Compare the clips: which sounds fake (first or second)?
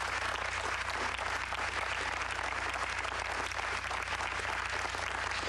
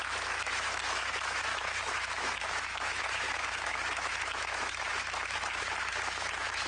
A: second